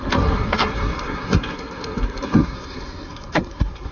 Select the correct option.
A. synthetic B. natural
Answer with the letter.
A